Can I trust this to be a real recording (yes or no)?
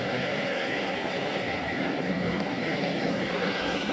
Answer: no